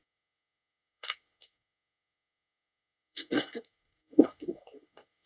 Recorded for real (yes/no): no